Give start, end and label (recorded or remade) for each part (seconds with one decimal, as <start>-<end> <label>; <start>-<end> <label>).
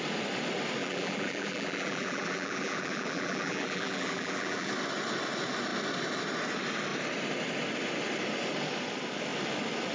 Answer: 0.0-0.8 recorded; 0.8-4.7 remade; 4.7-9.9 recorded